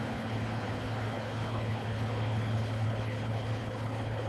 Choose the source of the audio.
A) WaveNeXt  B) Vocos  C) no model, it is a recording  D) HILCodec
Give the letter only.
D